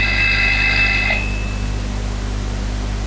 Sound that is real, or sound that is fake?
real